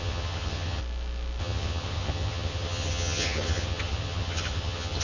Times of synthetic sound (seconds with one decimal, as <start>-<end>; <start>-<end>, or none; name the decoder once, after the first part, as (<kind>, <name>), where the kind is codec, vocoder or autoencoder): 0.0-0.8 (vocoder, HiFi-GAN); 1.4-5.0